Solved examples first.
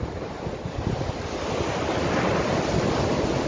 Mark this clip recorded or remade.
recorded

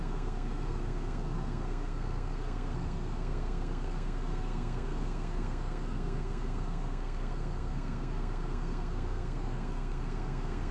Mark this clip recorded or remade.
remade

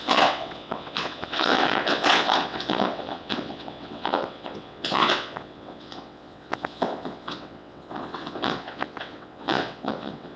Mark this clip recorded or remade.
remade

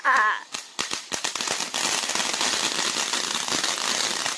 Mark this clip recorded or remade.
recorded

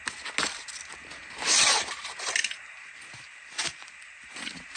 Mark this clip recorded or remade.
recorded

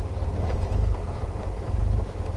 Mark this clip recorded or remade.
remade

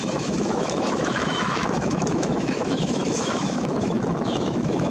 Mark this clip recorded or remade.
remade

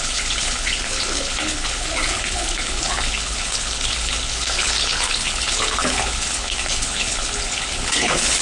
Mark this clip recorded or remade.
remade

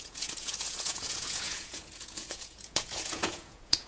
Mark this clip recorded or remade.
remade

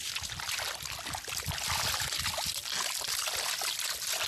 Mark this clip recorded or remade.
recorded